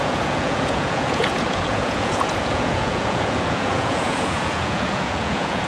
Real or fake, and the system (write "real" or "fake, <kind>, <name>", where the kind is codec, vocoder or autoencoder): fake, vocoder, Vocos